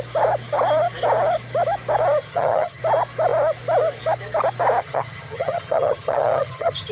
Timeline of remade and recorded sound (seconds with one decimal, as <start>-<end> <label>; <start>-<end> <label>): 0.0-2.2 recorded; 2.2-2.8 remade; 2.8-4.8 recorded; 4.8-6.9 remade